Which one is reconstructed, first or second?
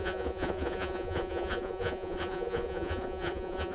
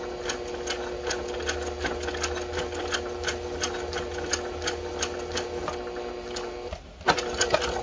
first